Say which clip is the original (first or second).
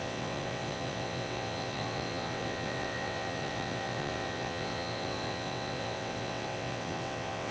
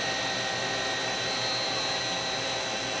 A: second